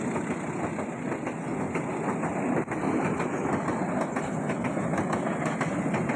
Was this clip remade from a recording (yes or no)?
no